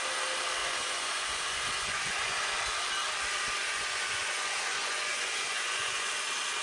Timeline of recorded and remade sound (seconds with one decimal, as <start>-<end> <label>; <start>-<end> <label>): 0.0-0.6 recorded; 0.6-2.5 remade; 2.5-3.6 recorded; 3.6-6.1 remade; 6.1-6.6 recorded